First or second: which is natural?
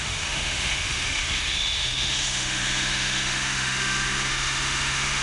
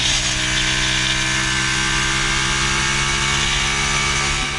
second